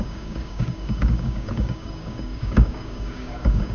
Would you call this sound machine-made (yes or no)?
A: yes